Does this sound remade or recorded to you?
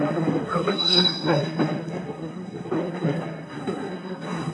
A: remade